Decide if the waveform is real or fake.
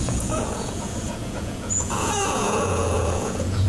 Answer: fake